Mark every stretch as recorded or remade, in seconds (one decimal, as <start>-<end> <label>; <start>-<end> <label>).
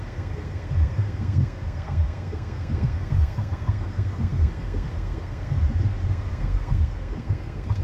0.0-5.6 remade; 5.6-6.1 recorded; 6.1-7.8 remade